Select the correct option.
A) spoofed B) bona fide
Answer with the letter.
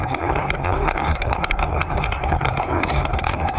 A